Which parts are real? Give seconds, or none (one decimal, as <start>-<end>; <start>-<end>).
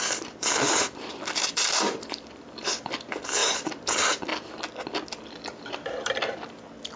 3.4-3.9; 4.3-7.0